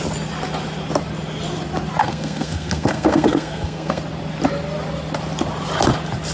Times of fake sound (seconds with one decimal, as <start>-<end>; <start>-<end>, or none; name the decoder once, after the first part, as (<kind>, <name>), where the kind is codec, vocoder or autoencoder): 2.0-4.0 (codec, SNAC)